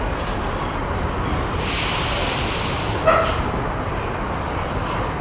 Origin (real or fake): real